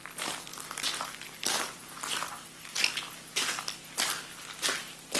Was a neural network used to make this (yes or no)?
no